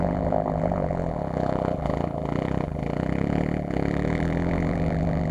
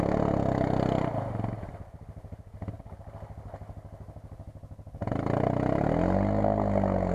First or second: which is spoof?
first